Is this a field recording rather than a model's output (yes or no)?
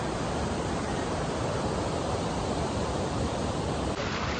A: no